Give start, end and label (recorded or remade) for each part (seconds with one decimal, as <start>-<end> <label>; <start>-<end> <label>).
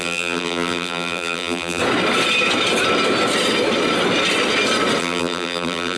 0.0-1.8 remade; 1.8-5.0 recorded; 5.0-6.0 remade